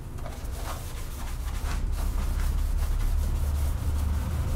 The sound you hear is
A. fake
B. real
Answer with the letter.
B